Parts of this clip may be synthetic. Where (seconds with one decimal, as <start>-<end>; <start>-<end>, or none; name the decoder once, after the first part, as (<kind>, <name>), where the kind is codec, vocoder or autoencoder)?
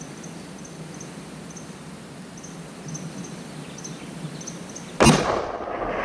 none